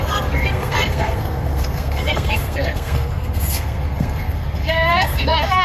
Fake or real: fake